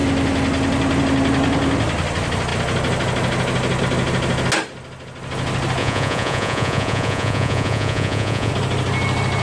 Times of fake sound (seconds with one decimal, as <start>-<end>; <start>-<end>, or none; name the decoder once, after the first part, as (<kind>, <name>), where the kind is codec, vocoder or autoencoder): 5.8-8.5 (vocoder, Vocos)